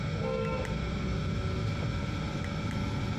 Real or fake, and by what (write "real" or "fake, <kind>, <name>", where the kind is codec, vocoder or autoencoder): real